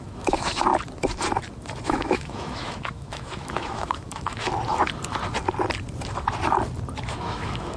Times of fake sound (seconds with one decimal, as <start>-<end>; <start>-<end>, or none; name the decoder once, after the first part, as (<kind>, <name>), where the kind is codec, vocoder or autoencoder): 0.0-0.7 (autoencoder, DAC-VAE); 1.8-4.5; 7.1-7.8